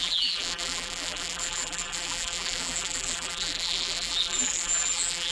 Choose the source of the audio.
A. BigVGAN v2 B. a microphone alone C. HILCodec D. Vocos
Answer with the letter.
A